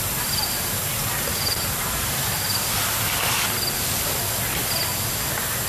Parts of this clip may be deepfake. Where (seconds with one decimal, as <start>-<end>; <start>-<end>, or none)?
1.3-2.7